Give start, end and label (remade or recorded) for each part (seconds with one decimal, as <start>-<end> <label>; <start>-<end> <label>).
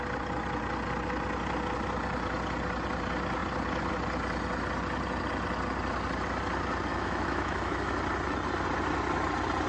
0.0-6.9 recorded; 6.9-7.9 remade; 7.9-9.7 recorded